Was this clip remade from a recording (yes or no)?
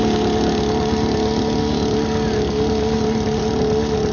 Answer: no